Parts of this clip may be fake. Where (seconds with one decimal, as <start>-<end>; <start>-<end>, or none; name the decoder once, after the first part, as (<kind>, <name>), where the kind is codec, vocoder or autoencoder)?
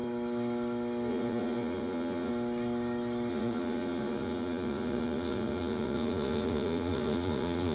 1.1-2.3 (vocoder, Vocos); 3.3-7.7